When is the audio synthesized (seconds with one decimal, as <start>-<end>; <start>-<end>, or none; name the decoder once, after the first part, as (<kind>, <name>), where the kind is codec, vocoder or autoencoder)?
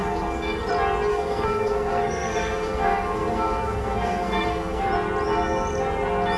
0.0-0.7 (codec, SNAC); 1.1-4.9